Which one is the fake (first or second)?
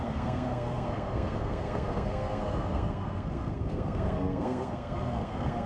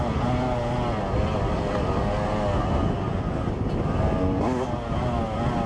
first